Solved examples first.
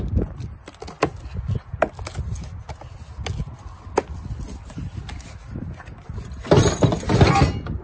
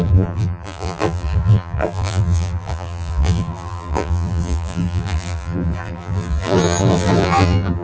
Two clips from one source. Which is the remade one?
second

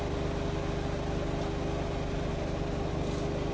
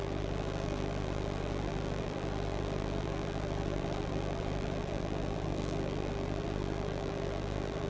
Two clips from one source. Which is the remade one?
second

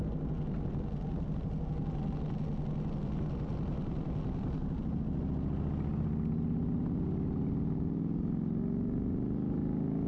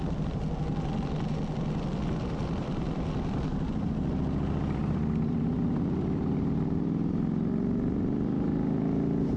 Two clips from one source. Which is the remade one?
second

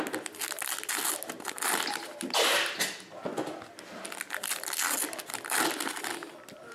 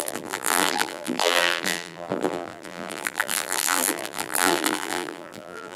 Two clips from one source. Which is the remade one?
second